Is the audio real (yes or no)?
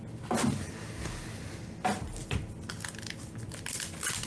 yes